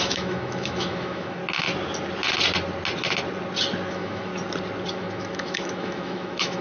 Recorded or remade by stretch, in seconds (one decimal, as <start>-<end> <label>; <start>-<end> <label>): 0.0-1.4 remade; 1.4-3.9 recorded; 3.9-4.3 remade; 4.3-4.9 recorded; 4.9-6.6 remade